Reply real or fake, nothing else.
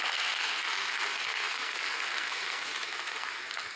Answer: fake